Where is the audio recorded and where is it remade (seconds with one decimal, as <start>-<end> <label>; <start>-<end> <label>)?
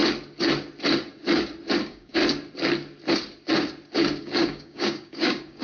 0.0-1.8 recorded; 1.8-2.2 remade; 2.2-4.2 recorded; 4.2-5.6 remade